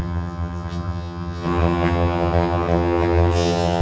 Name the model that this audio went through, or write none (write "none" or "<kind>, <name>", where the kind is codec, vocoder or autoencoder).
vocoder, HiFi-GAN